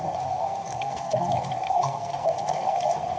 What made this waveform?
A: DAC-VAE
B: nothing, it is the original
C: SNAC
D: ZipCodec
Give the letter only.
C